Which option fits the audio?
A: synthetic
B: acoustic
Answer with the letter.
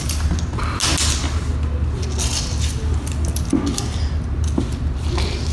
B